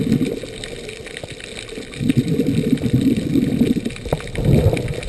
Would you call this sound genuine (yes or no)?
yes